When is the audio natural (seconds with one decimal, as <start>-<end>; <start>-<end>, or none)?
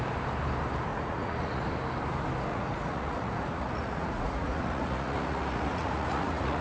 0.0-0.9; 1.6-2.5